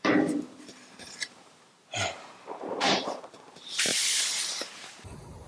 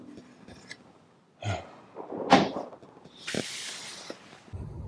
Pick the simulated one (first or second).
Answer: first